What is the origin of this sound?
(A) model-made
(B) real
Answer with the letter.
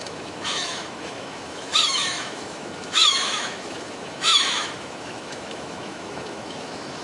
A